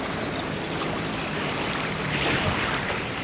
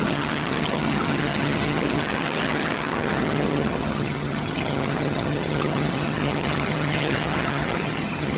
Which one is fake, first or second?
second